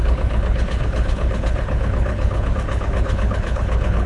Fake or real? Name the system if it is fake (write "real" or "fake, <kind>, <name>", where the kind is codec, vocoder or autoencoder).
fake, codec, HILCodec